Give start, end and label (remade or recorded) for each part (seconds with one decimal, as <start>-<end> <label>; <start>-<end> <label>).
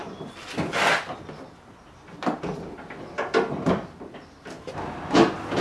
0.0-5.6 recorded